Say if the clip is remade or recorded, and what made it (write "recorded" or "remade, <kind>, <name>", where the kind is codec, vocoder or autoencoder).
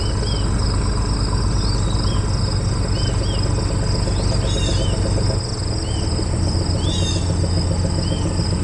recorded